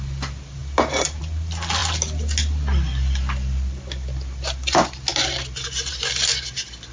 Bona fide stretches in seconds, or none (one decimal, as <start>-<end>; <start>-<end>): 0.0-6.9